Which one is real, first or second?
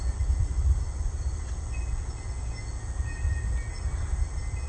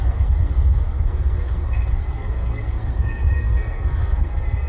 first